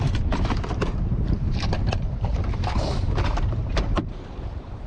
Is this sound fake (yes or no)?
yes